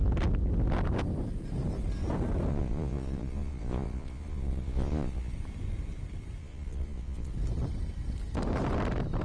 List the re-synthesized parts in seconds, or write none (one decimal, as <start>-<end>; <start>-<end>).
2.5-5.3; 6.4-7.3